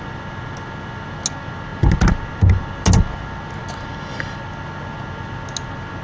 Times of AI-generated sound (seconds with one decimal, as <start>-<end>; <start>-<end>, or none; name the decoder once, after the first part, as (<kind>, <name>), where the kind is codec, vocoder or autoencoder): none